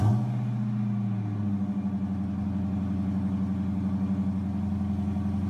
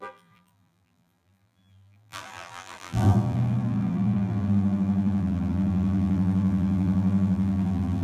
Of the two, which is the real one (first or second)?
first